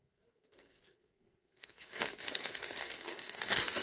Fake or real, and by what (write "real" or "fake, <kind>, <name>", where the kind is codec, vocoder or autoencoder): fake, codec, SNAC